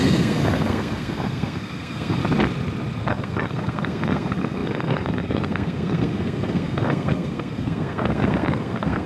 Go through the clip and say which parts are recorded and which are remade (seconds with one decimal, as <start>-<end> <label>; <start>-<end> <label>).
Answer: 0.0-2.2 remade; 2.2-3.1 recorded; 3.1-9.1 remade